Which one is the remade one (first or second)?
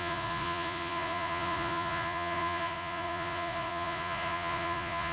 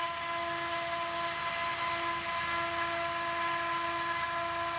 first